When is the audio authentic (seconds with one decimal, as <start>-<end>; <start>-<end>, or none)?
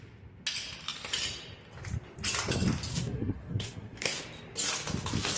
0.0-2.9; 4.2-5.4